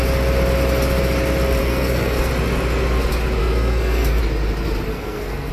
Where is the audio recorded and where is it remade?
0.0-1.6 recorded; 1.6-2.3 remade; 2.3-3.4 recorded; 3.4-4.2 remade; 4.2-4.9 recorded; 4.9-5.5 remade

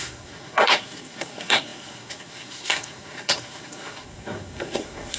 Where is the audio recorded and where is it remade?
0.0-5.2 remade

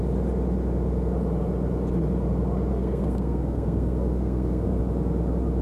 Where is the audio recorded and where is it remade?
0.0-2.7 recorded; 2.7-4.8 remade; 4.8-5.6 recorded

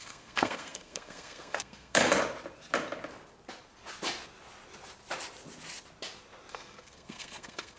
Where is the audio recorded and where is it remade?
0.0-2.0 remade; 2.0-6.5 recorded; 6.5-7.8 remade

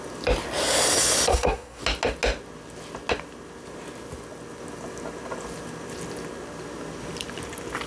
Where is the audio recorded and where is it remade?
0.0-1.3 recorded; 1.3-1.8 remade; 1.8-7.9 recorded

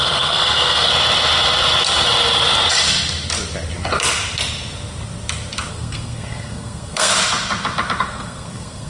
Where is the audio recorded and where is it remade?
0.0-0.9 remade; 0.9-5.7 recorded; 5.7-7.1 remade; 7.1-8.0 recorded; 8.0-8.9 remade

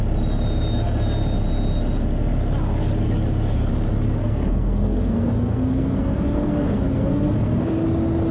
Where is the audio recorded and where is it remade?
0.0-4.2 recorded; 4.2-7.7 remade; 7.7-8.3 recorded

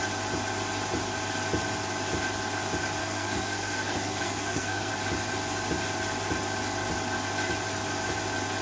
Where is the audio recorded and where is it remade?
0.0-3.0 recorded; 3.0-4.9 remade; 4.9-8.6 recorded